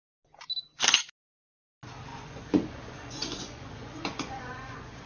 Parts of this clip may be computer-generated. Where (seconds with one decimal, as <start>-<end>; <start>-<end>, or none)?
2.1-5.1